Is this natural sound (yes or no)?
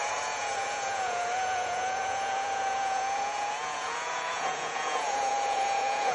no